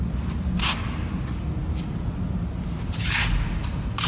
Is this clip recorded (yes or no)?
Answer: yes